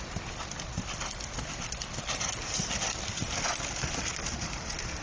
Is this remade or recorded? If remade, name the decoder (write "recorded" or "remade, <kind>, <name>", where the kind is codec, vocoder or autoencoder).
recorded